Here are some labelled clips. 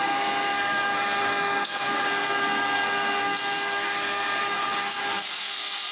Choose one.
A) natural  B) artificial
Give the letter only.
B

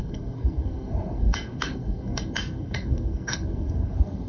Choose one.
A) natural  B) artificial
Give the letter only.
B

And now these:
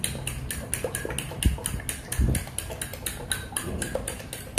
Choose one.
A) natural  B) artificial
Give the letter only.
A